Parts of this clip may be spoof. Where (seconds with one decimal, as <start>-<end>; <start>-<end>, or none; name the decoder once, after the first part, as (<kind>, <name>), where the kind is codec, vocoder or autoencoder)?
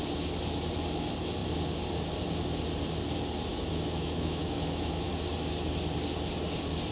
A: 3.5-5.1 (autoencoder, DAC-VAE)